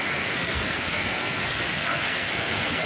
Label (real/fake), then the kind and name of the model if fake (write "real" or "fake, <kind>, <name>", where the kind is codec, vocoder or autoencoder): fake, codec, SNAC